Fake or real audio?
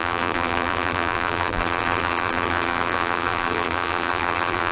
fake